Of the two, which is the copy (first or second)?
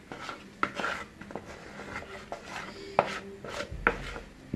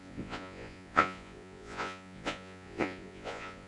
second